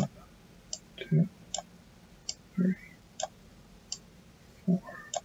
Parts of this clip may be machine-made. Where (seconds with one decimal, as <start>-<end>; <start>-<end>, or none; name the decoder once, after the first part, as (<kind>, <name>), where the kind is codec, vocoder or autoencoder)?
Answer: 2.2-5.2 (vocoder, BigVGAN v2)